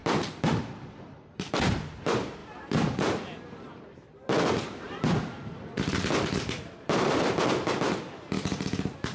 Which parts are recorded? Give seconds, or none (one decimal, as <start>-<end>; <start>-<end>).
1.5-2.4; 7.2-9.1